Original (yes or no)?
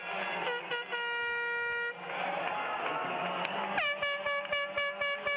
yes